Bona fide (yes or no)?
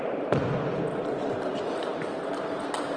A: yes